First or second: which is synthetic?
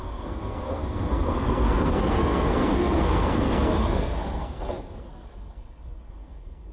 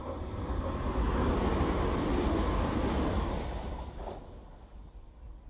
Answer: first